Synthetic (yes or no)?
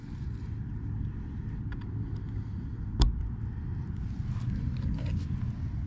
no